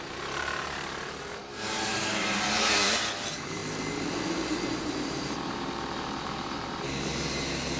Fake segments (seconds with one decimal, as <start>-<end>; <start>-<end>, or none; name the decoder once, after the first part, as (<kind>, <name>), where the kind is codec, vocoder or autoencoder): 0.0-3.6 (vocoder, BigVGAN v2); 4.8-7.8